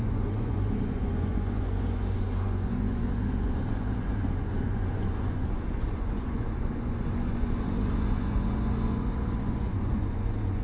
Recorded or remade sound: remade